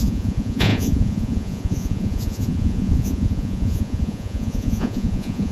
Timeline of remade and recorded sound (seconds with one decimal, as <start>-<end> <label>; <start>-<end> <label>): 0.0-5.5 remade